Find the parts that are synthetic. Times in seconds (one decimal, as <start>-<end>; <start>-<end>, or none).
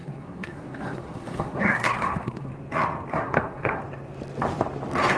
0.0-2.5; 3.1-3.8